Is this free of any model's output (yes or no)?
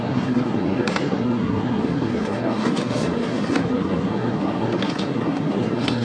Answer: no